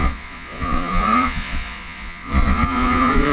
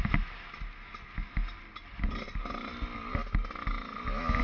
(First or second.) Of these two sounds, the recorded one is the second